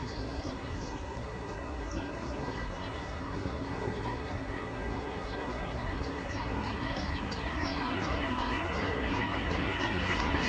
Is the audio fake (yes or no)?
yes